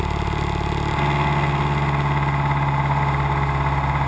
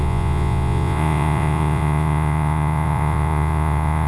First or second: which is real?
first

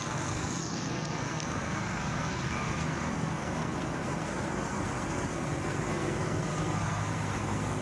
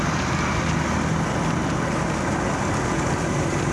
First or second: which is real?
second